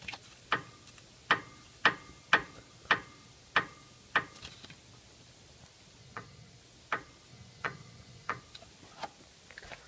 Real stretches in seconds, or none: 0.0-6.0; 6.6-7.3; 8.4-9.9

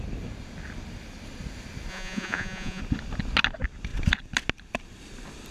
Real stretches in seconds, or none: 0.0-1.9; 2.8-5.5

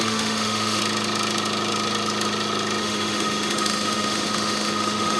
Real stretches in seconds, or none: 0.8-2.8

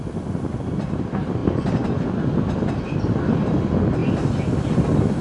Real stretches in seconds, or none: 0.0-5.2

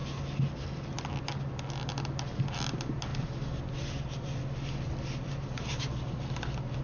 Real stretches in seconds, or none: 0.0-6.8

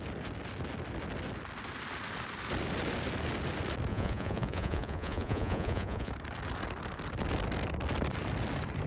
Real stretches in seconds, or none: 0.0-3.9; 6.1-8.9

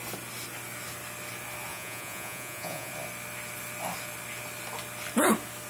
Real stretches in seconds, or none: 0.0-1.7; 2.9-5.7